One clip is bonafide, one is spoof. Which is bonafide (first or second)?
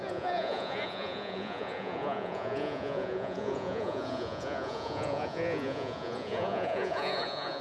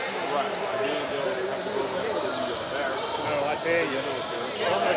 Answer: second